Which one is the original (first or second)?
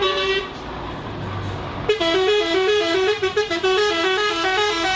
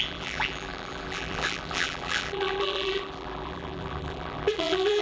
first